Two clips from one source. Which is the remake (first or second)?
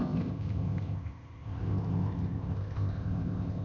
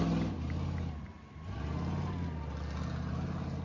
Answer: first